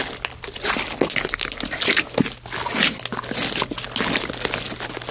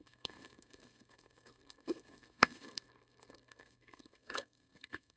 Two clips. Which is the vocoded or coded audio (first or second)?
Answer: second